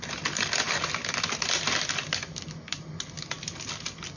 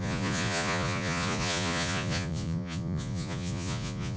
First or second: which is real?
first